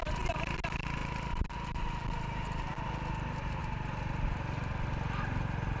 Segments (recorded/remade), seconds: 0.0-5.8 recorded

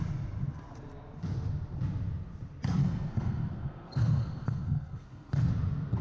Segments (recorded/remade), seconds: 0.0-2.8 recorded; 2.8-5.5 remade; 5.5-6.0 recorded

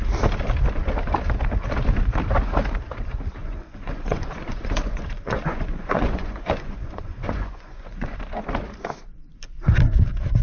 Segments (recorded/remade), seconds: 0.0-3.4 recorded; 3.4-8.2 remade; 8.2-10.4 recorded